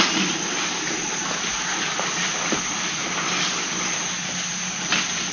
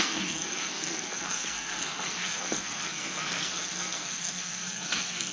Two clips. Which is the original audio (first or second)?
first